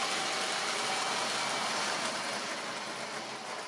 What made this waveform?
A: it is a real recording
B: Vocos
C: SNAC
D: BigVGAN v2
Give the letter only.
A